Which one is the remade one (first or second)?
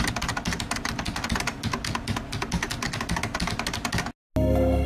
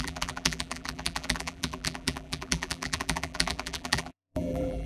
second